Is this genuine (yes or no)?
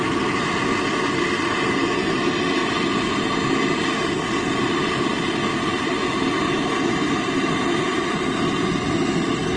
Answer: yes